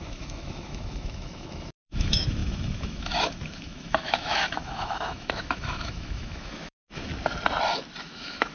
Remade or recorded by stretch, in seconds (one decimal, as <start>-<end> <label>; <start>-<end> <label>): 0.0-7.1 remade; 7.1-8.0 recorded; 8.0-8.5 remade